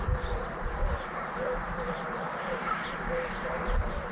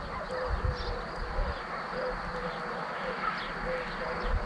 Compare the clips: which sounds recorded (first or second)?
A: second